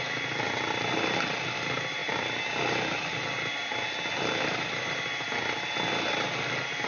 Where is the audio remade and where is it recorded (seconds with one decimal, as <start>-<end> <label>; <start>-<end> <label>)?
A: 0.0-6.9 recorded

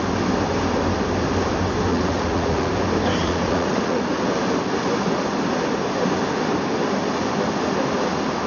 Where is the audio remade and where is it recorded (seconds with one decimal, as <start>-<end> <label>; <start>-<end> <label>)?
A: 0.0-1.9 recorded; 1.9-2.7 remade; 2.7-3.2 recorded; 3.2-4.2 remade; 4.2-8.5 recorded